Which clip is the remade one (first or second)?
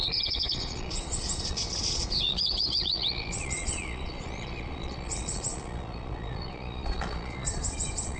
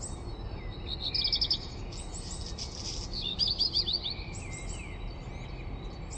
first